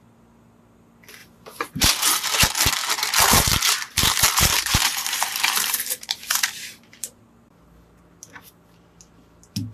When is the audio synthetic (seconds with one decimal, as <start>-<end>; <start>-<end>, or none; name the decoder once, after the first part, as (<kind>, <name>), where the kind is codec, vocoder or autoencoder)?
1.2-1.9 (vocoder, BigVGAN v2); 2.8-7.2